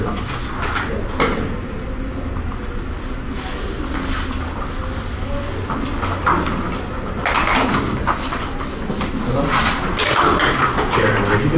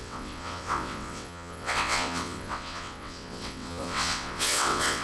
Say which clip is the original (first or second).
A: first